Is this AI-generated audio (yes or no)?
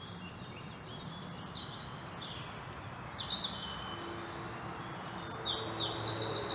no